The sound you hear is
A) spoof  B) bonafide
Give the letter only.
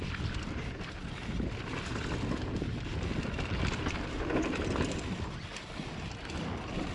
B